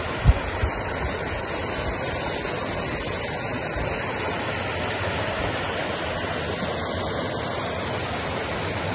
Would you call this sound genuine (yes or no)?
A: yes